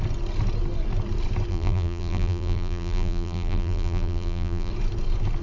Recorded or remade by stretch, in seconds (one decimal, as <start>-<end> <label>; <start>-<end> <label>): 0.0-1.5 recorded; 1.5-4.7 remade; 4.7-5.4 recorded